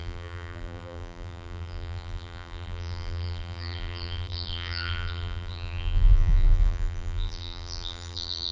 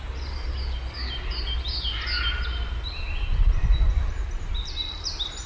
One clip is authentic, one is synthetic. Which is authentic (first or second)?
second